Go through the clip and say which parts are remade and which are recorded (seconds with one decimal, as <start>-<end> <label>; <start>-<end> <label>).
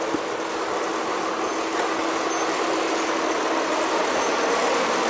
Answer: 0.0-5.1 recorded